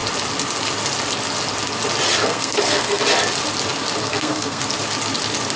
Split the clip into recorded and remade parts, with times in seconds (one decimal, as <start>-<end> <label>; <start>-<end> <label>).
0.0-2.2 recorded; 2.2-3.0 remade; 3.0-4.0 recorded; 4.0-4.6 remade; 4.6-5.6 recorded